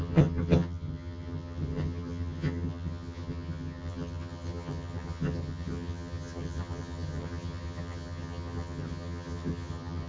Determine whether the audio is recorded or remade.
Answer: remade